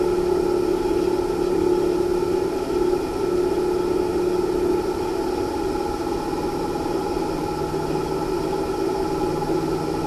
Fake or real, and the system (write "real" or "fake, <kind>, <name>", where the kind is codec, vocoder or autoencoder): real